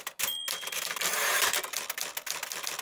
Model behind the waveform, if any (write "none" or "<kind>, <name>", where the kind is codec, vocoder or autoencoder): none